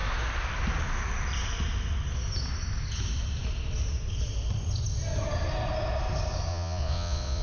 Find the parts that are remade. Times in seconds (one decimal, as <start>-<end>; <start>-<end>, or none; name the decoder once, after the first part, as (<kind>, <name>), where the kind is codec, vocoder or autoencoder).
6.5-7.4 (vocoder, Vocos)